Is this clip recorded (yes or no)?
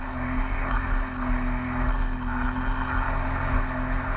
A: yes